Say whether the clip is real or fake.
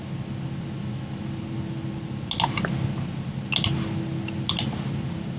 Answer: real